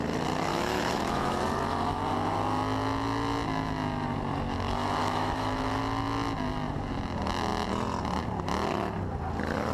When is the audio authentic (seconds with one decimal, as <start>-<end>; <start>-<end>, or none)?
0.0-0.5; 1.4-5.0; 5.8-9.7